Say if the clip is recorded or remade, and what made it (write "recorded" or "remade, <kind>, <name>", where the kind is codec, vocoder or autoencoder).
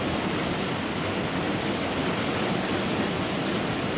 recorded